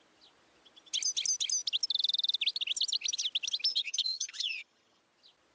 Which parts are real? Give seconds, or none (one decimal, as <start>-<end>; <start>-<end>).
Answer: 0.0-3.7; 5.0-5.5